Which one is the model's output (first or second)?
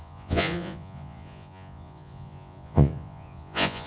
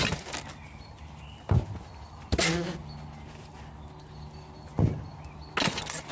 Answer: first